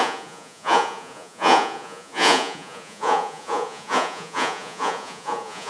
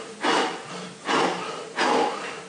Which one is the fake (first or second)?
first